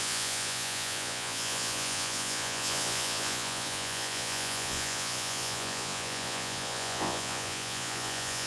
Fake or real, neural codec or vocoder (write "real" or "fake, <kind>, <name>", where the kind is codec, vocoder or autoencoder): fake, vocoder, Vocos